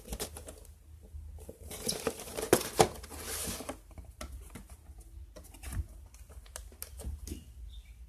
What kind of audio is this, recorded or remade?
recorded